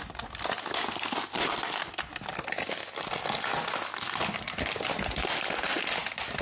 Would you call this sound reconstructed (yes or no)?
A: no